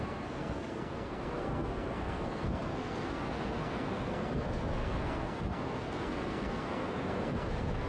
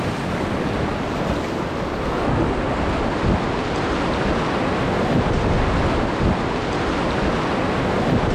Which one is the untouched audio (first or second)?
second